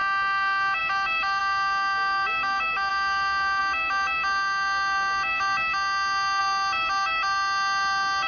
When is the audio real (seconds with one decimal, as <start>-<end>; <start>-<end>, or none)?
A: 0.0-8.3